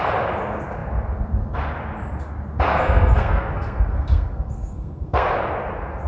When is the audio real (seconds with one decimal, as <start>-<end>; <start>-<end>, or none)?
0.0-2.7; 5.3-6.1